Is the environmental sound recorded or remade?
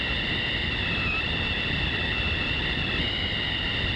recorded